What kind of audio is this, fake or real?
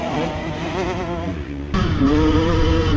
fake